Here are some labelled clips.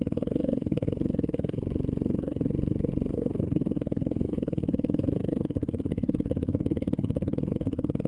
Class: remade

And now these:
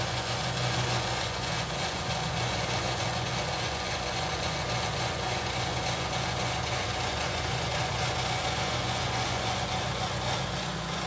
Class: remade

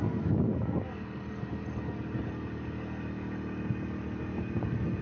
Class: recorded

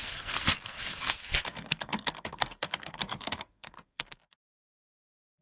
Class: remade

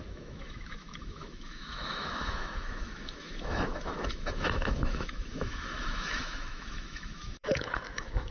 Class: remade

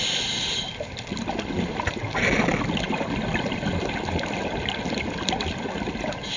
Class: recorded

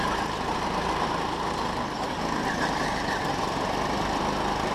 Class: recorded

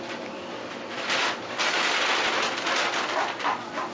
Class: recorded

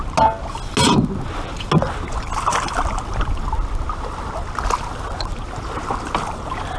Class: recorded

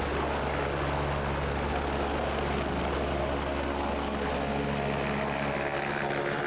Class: recorded